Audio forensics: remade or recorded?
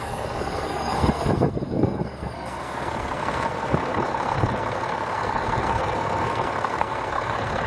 remade